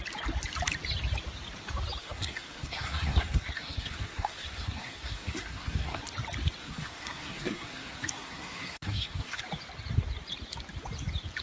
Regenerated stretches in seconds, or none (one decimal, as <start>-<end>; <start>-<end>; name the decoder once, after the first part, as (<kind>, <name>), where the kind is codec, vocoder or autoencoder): 2.0-6.0 (codec, SNAC); 6.6-9.4